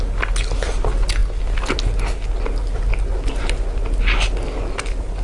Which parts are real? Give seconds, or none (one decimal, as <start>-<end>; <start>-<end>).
0.0-5.2